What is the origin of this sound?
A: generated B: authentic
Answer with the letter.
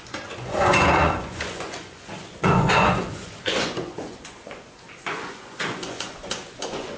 A